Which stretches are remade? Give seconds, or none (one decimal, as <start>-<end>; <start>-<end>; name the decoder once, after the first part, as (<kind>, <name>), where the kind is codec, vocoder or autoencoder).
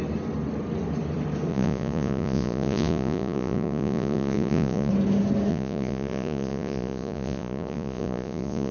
1.5-4.9 (vocoder, Vocos); 5.5-8.7